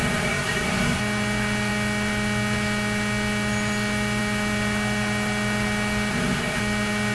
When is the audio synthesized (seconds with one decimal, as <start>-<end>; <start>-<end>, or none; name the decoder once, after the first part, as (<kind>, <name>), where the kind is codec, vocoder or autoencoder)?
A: 0.0-1.0 (codec, SNAC); 6.1-6.6